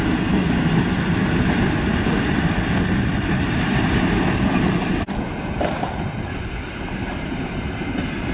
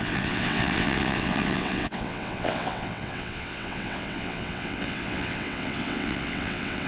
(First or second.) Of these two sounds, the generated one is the second